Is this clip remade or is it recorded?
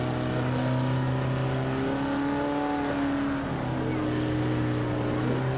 recorded